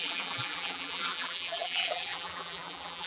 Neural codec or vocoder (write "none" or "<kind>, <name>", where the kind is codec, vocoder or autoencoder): vocoder, BigVGAN v2